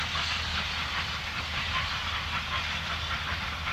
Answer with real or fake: real